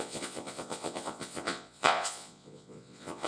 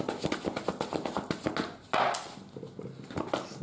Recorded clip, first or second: second